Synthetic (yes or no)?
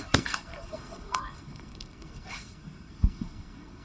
yes